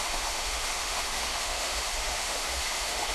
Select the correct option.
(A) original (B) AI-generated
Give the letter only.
B